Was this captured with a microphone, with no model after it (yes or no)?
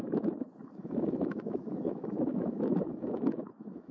no